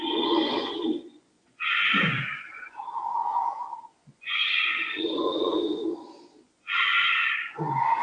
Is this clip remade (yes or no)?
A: yes